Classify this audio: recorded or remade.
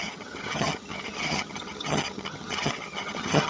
remade